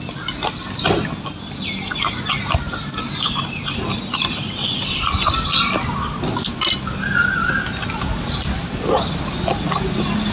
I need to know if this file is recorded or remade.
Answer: recorded